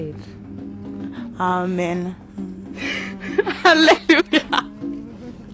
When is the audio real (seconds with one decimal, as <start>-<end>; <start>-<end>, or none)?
0.0-5.5